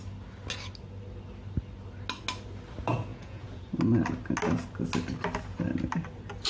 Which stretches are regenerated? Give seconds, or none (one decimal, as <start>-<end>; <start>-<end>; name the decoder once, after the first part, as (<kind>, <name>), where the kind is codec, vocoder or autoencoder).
3.1-3.7 (vocoder, Vocos)